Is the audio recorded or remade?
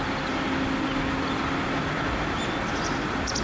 recorded